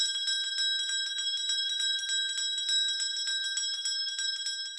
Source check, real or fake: real